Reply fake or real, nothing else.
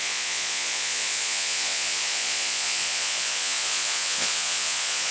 fake